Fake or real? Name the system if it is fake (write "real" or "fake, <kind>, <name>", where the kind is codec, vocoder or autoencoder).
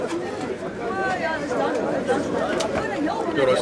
real